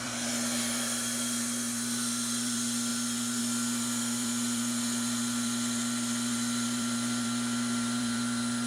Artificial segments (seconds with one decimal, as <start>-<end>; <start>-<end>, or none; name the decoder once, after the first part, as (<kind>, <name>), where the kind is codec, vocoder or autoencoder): 0.0-8.7 (vocoder, BigVGAN v2)